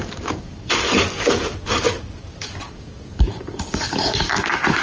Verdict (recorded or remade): remade